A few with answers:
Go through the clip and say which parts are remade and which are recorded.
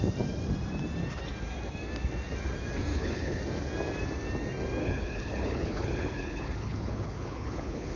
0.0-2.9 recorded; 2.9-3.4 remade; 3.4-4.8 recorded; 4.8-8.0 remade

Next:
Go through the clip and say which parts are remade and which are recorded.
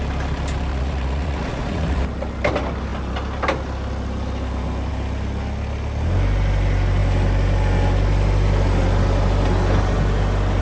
0.0-0.7 recorded; 0.7-2.0 remade; 2.0-10.6 recorded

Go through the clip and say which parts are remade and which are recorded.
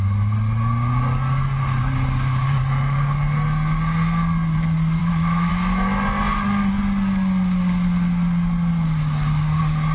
0.0-5.0 recorded; 5.0-5.5 remade; 5.5-9.9 recorded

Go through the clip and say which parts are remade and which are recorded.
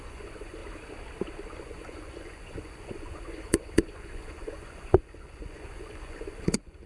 0.0-0.6 remade; 0.6-1.6 recorded; 1.6-6.9 remade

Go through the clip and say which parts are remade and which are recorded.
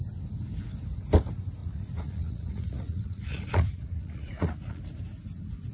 0.0-1.6 recorded; 1.6-4.8 remade; 4.8-5.7 recorded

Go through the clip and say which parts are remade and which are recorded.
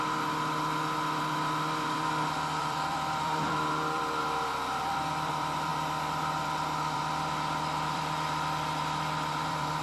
0.0-9.8 remade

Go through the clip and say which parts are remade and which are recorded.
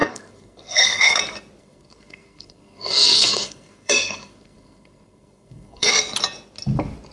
0.0-1.2 remade; 1.2-1.6 recorded; 1.6-5.9 remade; 5.9-7.1 recorded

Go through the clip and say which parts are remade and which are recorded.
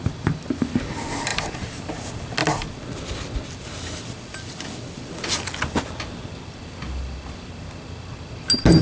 0.0-8.8 recorded